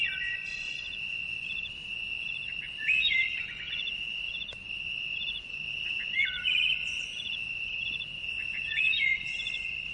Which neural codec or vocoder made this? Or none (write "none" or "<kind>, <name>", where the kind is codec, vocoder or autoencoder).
vocoder, Vocos